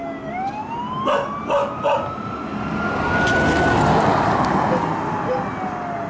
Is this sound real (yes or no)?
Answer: yes